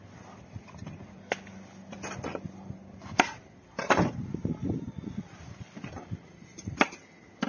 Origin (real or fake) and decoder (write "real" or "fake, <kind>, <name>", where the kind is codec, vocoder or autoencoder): real